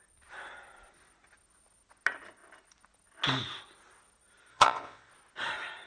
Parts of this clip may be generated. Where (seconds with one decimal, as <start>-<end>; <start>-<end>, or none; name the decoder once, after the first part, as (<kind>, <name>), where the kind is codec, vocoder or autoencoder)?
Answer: 4.5-5.1 (vocoder, WaveNeXt)